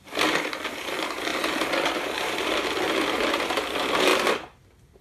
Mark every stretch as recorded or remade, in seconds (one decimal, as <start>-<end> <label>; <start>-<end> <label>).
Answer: 0.0-1.3 remade; 1.3-2.0 recorded; 2.0-5.0 remade